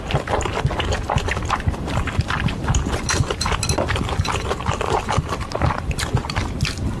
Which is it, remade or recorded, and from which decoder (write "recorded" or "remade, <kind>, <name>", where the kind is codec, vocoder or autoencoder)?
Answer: recorded